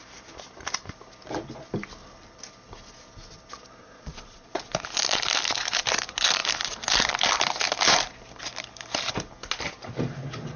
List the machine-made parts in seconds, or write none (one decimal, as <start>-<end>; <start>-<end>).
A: 3.8-4.6